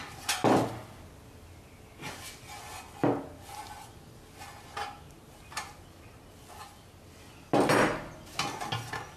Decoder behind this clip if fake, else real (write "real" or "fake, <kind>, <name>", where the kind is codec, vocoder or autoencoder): real